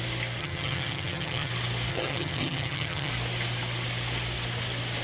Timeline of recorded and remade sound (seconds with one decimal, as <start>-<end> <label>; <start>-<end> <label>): 0.0-0.4 recorded; 0.4-1.5 remade; 1.5-1.9 recorded; 1.9-3.1 remade; 3.1-5.0 recorded